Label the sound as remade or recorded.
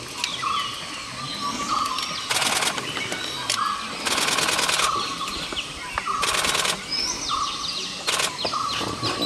recorded